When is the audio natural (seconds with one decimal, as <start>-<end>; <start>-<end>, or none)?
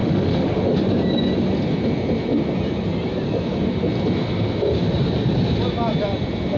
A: 0.6-6.6